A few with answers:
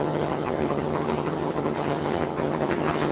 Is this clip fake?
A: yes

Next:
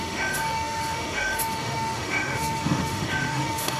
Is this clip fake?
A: yes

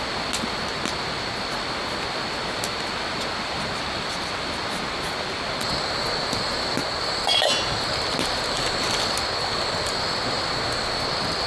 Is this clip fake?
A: no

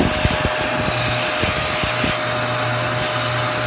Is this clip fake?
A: no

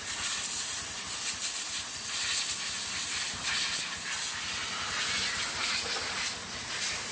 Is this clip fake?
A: no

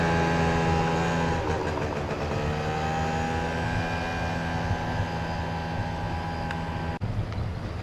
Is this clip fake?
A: no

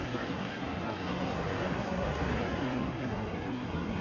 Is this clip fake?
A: yes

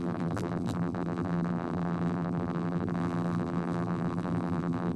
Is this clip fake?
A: yes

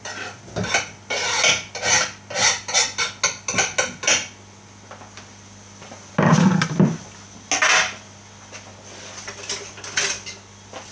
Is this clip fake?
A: no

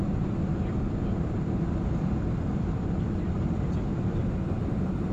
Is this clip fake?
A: no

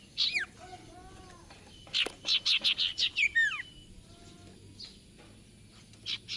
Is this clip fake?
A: no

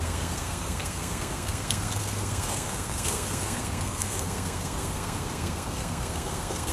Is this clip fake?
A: yes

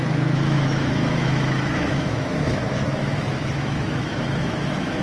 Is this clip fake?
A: yes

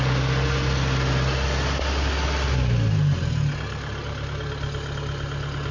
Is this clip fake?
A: no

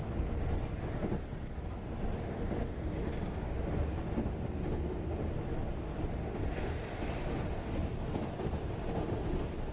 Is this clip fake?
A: no